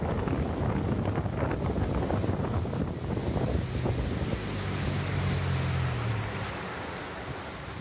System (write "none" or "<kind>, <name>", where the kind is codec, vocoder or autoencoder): none